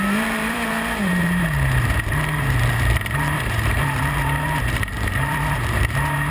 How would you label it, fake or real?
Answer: fake